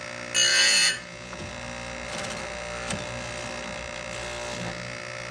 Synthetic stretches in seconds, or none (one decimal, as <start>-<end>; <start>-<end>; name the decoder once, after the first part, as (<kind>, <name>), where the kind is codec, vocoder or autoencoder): 0.5-1.5 (vocoder, Vocos)